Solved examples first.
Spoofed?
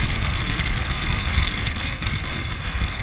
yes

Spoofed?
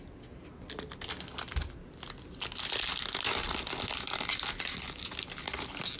no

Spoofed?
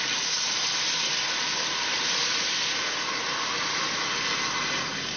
no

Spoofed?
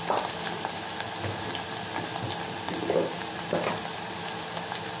no